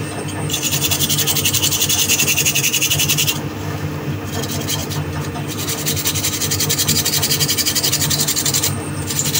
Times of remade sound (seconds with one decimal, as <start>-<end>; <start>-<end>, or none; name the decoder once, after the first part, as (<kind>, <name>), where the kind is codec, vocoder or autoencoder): none